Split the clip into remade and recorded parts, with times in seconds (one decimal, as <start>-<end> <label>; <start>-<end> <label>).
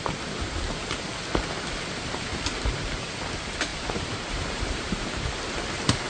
0.0-3.7 recorded; 3.7-5.1 remade; 5.1-6.1 recorded